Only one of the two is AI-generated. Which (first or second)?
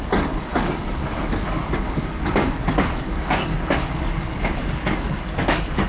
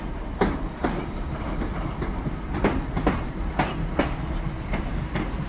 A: first